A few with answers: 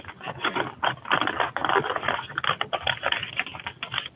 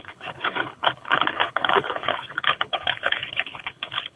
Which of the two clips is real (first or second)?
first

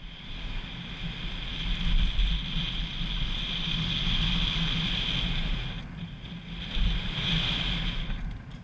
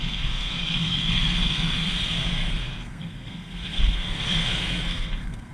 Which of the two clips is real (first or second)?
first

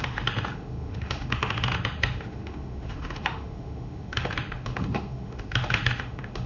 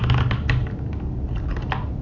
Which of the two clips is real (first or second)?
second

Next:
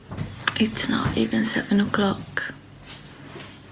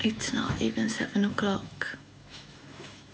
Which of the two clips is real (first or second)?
first